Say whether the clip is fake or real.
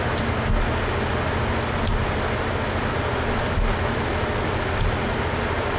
real